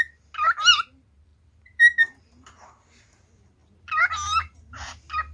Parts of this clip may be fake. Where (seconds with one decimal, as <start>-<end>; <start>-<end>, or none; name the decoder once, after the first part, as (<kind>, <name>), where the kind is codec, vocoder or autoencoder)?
none